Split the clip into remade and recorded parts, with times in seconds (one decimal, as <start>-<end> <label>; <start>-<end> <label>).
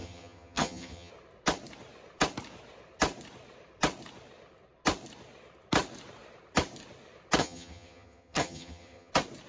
0.0-1.1 remade; 1.1-7.4 recorded; 7.4-9.1 remade; 9.1-9.5 recorded